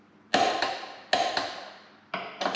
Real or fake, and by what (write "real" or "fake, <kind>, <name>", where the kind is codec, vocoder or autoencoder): real